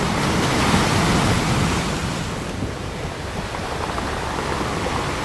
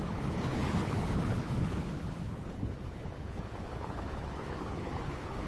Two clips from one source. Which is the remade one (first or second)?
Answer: second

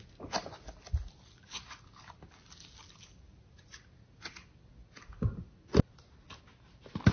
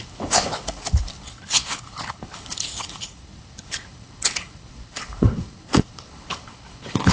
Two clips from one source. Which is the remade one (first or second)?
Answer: second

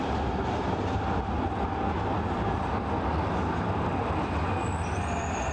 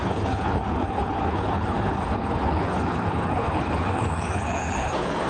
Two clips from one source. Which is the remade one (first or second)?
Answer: second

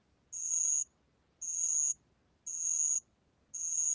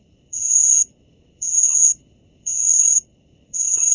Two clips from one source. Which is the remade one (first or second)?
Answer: second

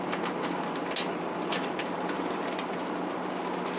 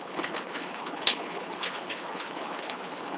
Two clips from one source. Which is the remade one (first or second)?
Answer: second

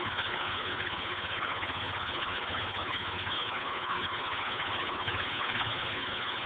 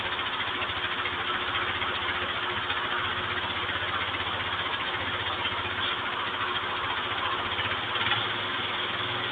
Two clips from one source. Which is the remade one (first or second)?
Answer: first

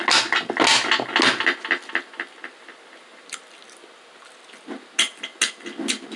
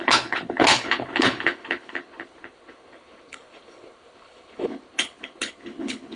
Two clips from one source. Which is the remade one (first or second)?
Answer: second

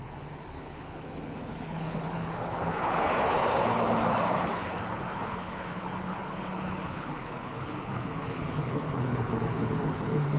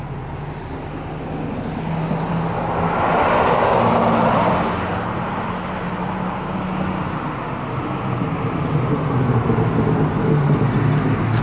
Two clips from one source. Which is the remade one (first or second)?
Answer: first